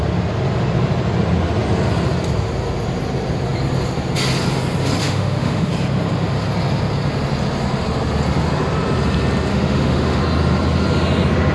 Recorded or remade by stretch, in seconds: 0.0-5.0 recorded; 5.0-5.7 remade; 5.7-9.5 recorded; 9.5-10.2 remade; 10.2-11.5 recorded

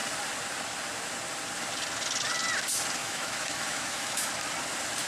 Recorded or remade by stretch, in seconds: 0.0-3.0 recorded; 3.0-4.3 remade; 4.3-5.1 recorded

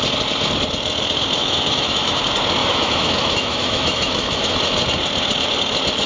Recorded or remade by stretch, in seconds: 0.0-1.4 recorded; 1.4-2.2 remade; 2.2-2.6 recorded; 2.6-4.6 remade; 4.6-6.1 recorded

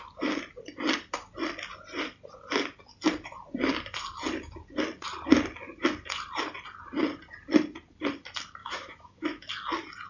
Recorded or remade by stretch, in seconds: 0.0-8.6 recorded; 8.6-9.5 remade; 9.5-10.1 recorded